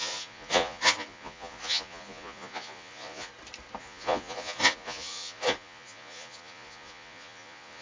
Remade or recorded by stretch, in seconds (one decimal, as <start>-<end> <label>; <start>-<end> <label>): 0.0-3.3 remade; 3.3-3.8 recorded; 3.8-7.8 remade